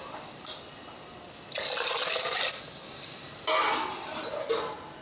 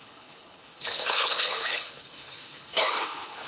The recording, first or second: first